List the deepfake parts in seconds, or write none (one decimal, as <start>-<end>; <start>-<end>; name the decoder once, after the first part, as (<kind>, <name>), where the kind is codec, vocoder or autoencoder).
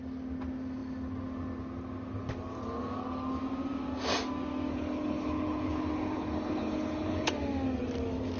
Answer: 4.7-7.3 (codec, HILCodec)